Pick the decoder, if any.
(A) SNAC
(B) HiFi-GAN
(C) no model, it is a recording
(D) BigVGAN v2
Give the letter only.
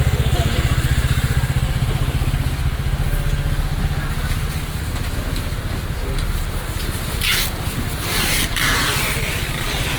C